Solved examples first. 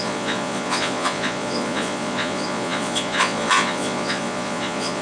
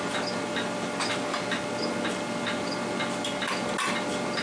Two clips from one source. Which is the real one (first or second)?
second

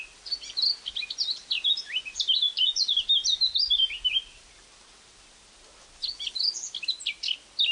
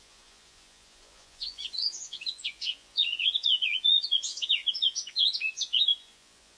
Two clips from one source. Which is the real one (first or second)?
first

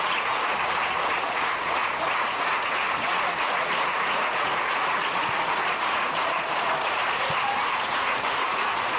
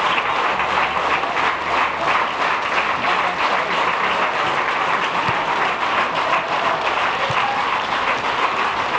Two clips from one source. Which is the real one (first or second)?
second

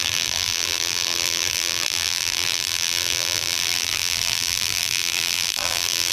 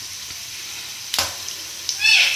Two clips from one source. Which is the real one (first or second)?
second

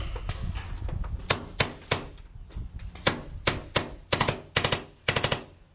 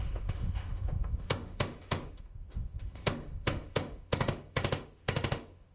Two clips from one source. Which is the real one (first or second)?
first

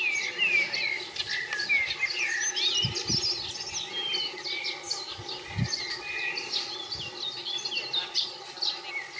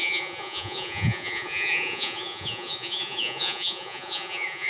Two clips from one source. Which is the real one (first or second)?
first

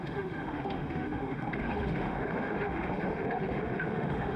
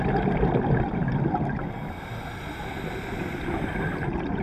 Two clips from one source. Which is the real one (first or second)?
second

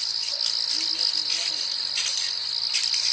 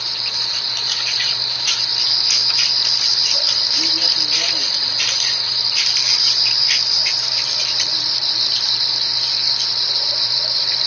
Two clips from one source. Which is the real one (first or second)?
first